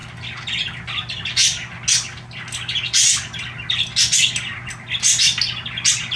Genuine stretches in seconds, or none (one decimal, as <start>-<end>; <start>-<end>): 0.0-6.2

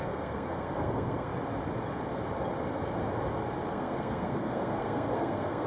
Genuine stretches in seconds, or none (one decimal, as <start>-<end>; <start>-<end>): 1.3-3.7

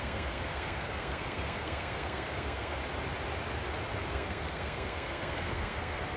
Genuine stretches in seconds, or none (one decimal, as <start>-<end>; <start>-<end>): 2.8-4.0

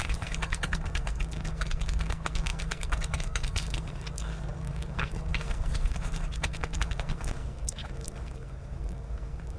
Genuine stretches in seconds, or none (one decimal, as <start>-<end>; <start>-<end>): none